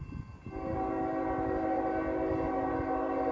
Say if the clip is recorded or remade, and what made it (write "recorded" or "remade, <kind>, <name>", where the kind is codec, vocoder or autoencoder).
recorded